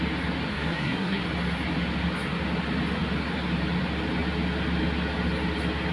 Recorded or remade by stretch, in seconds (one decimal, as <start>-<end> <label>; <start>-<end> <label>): 0.0-0.5 recorded; 0.5-1.2 remade; 1.2-5.9 recorded